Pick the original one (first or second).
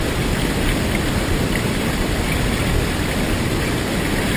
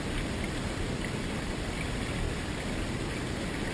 second